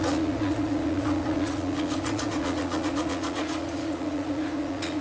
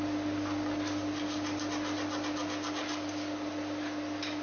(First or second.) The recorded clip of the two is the second